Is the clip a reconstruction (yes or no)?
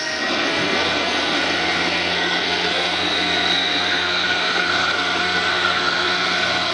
yes